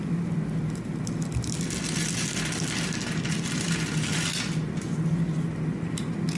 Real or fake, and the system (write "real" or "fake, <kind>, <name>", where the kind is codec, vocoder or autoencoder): real